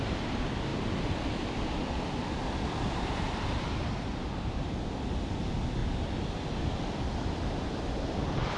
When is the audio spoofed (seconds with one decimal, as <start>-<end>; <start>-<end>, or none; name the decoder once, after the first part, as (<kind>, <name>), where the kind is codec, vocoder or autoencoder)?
0.0-5.8 (vocoder, BigVGAN v2)